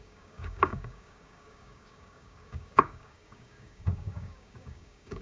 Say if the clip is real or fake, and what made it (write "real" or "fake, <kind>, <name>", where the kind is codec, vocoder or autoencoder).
fake, codec, DAC